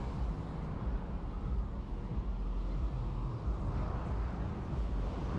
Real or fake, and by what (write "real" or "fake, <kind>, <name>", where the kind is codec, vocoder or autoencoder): real